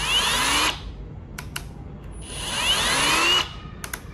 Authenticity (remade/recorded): recorded